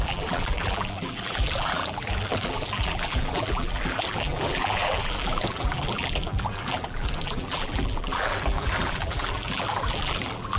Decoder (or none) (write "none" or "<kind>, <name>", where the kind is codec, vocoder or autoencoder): vocoder, BigVGAN v2